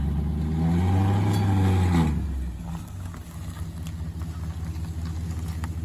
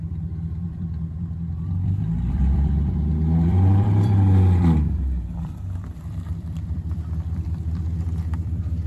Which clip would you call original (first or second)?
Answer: first